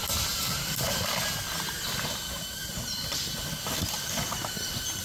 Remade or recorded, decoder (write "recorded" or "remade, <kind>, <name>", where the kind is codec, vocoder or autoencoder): recorded